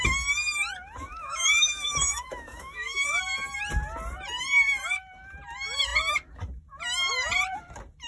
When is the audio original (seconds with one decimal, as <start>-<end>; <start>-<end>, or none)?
0.0-1.1; 3.2-8.1